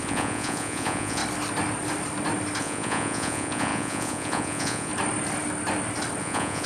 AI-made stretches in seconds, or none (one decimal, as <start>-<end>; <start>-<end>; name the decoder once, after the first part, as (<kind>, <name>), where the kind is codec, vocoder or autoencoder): 0.0-1.2 (vocoder, Vocos); 2.6-4.9; 6.2-6.7